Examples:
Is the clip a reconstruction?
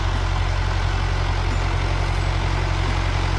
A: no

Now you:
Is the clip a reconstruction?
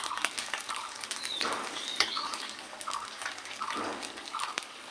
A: yes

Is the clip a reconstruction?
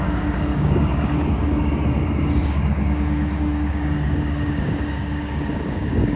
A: yes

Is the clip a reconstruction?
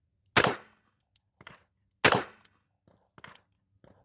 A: no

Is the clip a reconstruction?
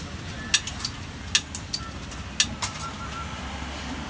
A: no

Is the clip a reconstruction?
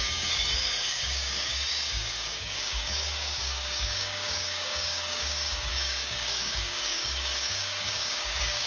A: yes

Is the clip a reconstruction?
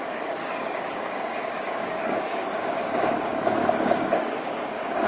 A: yes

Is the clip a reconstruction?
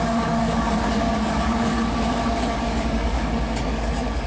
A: yes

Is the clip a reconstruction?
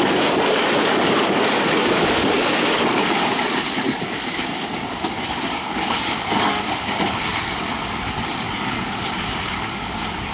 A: yes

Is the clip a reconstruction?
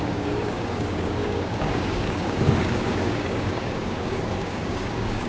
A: yes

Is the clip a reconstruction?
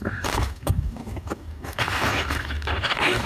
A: yes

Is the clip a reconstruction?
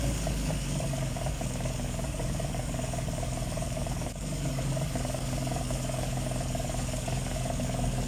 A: yes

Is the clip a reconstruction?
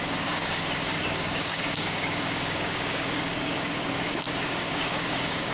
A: yes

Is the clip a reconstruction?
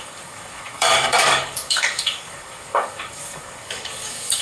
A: yes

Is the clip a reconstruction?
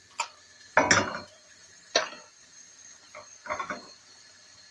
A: no